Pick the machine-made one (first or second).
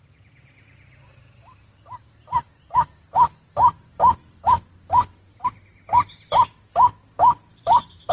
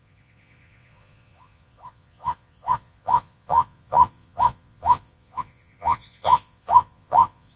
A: second